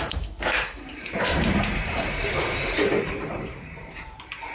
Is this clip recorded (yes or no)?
no